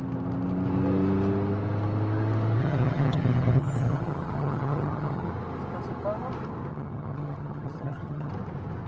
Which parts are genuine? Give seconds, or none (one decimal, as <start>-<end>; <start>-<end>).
0.0-2.6; 5.3-6.7; 8.3-8.9